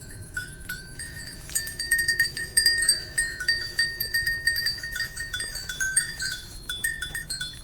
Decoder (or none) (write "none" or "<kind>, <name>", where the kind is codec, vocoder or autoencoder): autoencoder, DAC-VAE